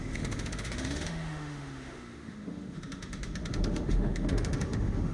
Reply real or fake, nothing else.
fake